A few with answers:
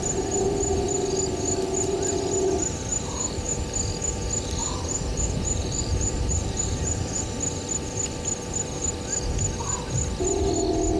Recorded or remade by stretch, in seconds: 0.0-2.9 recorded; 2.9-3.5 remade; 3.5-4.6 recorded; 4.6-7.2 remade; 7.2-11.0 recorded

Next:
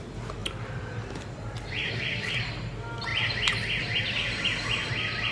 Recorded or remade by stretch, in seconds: 0.0-0.4 recorded; 0.4-2.4 remade; 2.4-5.3 recorded

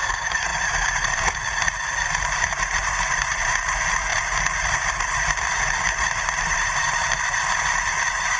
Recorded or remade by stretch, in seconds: 0.0-8.4 remade

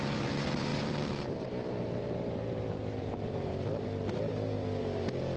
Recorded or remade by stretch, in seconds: 0.0-5.4 remade

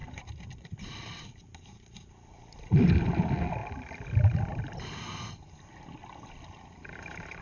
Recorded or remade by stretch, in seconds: 0.0-7.4 recorded